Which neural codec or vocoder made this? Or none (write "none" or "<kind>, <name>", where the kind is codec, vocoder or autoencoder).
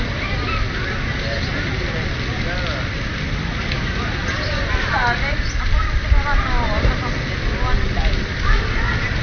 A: none